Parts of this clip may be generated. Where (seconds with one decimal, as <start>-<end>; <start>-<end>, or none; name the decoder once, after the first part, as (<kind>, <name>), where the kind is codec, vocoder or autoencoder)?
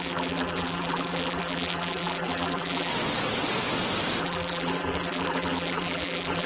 0.0-2.9 (vocoder, BigVGAN v2); 4.2-6.5